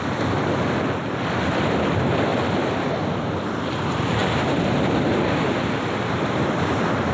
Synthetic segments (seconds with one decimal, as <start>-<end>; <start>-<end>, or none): none